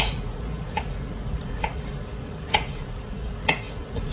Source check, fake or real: fake